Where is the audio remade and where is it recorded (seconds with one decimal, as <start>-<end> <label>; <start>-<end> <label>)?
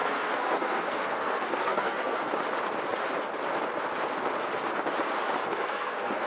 0.0-2.3 remade; 2.3-5.5 recorded; 5.5-6.3 remade